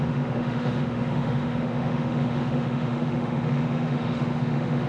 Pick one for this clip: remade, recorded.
remade